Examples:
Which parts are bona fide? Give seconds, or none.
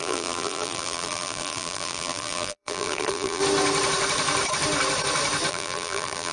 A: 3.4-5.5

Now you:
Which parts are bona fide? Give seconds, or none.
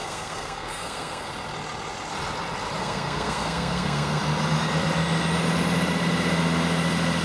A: 1.3-2.8; 4.2-7.2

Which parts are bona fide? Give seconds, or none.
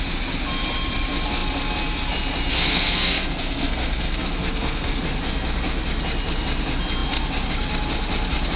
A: 0.0-2.5; 5.0-8.6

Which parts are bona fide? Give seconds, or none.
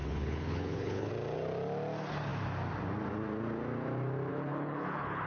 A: 1.1-4.3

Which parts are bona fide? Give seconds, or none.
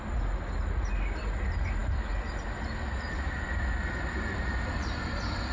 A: 0.0-5.5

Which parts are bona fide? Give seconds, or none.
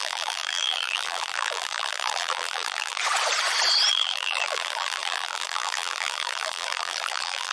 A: 3.0-3.9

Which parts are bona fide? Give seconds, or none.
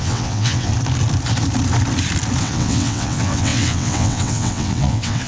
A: 0.7-2.4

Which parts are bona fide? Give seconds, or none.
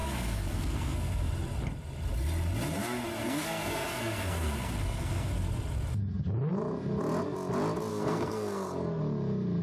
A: 1.3-3.2; 5.3-7.9; 9.0-9.6